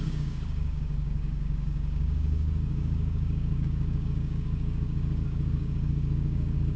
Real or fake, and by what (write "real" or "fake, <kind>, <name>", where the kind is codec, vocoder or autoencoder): fake, codec, DAC